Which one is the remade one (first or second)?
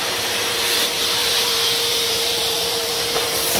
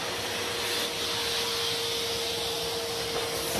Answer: first